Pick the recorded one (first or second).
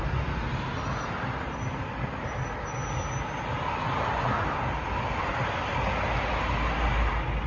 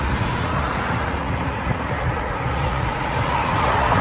first